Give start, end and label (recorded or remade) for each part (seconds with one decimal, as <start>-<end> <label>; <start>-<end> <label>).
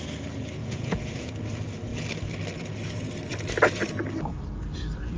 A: 0.0-0.6 recorded; 0.6-1.3 remade; 1.3-5.2 recorded